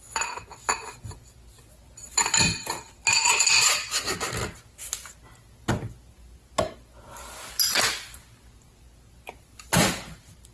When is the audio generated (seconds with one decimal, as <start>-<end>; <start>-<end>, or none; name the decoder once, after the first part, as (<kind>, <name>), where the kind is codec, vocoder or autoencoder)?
none